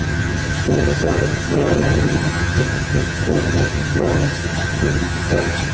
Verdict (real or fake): fake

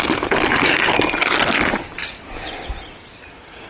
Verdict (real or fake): real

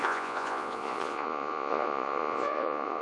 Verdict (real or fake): fake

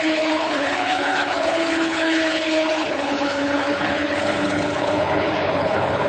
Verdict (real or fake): fake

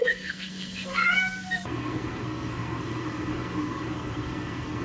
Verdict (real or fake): fake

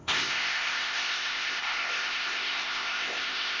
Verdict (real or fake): fake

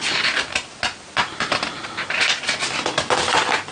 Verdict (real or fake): real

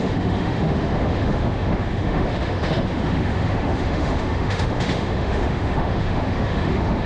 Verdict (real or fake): fake